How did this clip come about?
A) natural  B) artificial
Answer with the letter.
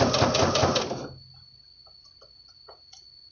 A